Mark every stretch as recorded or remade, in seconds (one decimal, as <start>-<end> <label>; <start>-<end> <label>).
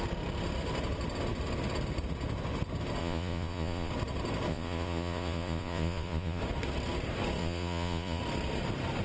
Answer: 0.0-3.0 recorded; 3.0-3.9 remade; 3.9-4.5 recorded; 4.5-6.4 remade; 6.4-7.4 recorded; 7.4-8.2 remade; 8.2-9.0 recorded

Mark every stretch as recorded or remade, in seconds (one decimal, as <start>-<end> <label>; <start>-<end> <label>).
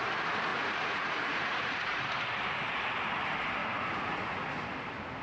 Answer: 0.0-0.5 recorded; 0.5-2.0 remade; 2.0-3.6 recorded; 3.6-4.5 remade; 4.5-5.2 recorded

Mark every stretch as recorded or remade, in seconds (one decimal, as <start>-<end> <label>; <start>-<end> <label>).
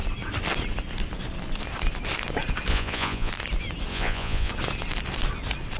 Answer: 0.0-2.7 recorded; 2.7-3.3 remade; 3.3-3.9 recorded; 3.9-4.5 remade; 4.5-5.8 recorded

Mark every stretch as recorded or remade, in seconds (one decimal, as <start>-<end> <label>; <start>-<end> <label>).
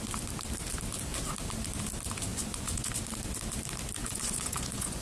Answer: 0.0-2.3 recorded; 2.3-2.9 remade; 2.9-4.0 recorded; 4.0-5.0 remade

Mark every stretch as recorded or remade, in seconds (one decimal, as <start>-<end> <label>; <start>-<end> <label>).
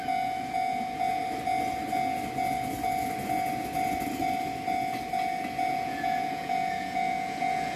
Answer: 0.0-1.2 remade; 1.2-5.7 recorded; 5.7-7.8 remade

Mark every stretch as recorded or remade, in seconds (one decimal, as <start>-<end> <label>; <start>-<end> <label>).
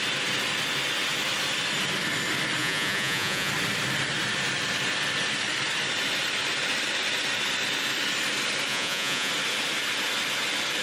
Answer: 0.0-2.6 recorded; 2.6-3.5 remade; 3.5-8.7 recorded; 8.7-9.3 remade; 9.3-10.8 recorded